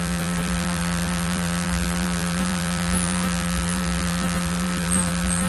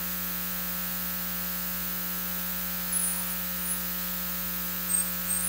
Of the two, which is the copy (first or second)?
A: first